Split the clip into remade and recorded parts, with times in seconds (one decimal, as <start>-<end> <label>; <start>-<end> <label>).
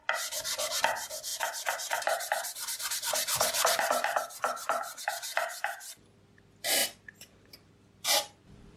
0.0-1.3 recorded; 1.3-5.0 remade; 5.0-6.8 recorded; 6.8-8.8 remade